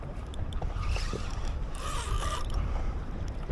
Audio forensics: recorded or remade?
remade